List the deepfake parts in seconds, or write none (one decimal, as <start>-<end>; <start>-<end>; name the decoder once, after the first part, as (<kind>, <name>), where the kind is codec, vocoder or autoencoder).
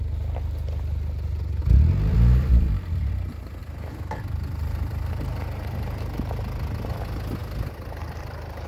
1.6-3.1 (vocoder, BigVGAN v2); 3.6-5.1